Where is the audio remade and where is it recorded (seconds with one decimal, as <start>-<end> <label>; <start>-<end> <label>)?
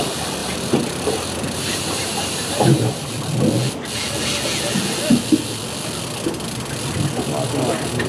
0.0-0.4 recorded; 0.4-3.1 remade; 3.1-8.1 recorded